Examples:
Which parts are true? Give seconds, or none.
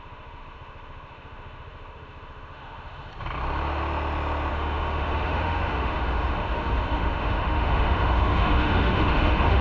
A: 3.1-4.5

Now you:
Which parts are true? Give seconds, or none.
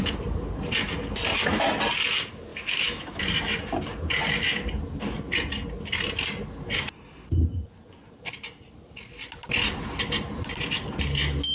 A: 0.0-2.5; 3.2-11.5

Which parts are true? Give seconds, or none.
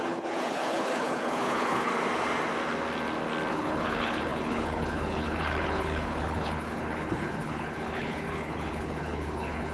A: 1.9-3.5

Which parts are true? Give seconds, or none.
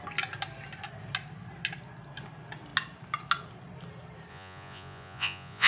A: 0.0-4.3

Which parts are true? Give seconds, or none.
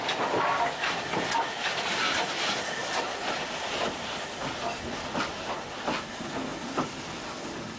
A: 0.0-7.8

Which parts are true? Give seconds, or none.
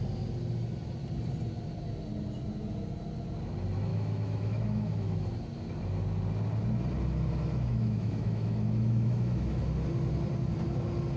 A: 0.0-3.9; 5.3-7.7; 9.6-11.2